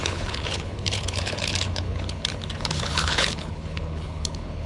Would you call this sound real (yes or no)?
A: no